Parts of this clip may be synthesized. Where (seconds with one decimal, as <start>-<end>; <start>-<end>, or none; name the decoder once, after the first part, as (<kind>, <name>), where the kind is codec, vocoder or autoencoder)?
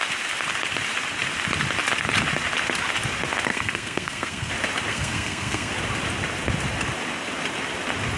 3.5-4.5 (codec, SNAC); 4.9-5.7